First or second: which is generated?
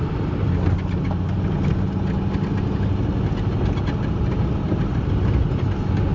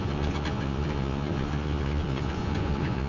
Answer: second